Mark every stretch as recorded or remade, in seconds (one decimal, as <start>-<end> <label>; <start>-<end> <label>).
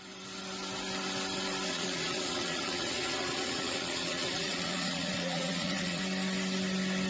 0.0-1.7 recorded; 1.7-6.0 remade; 6.0-7.1 recorded